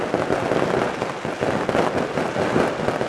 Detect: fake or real real